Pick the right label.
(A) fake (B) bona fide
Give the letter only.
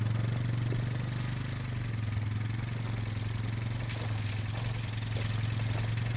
B